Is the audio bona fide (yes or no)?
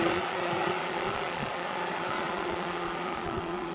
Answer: no